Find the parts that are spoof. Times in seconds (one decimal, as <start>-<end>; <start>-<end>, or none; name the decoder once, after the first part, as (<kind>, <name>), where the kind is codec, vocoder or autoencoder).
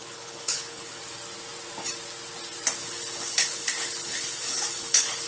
0.0-1.0 (codec, HILCodec); 2.8-5.3